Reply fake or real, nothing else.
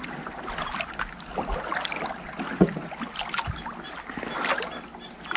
real